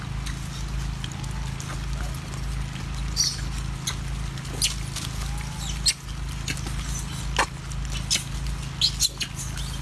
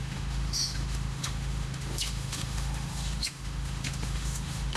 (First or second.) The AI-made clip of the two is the second